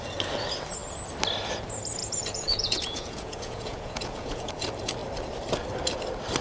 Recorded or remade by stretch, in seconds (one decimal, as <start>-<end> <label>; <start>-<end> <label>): 0.0-2.0 recorded; 2.0-4.5 remade; 4.5-6.4 recorded